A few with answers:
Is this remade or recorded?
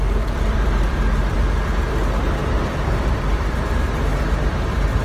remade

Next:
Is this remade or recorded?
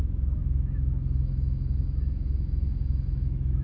remade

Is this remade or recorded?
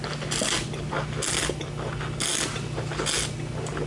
recorded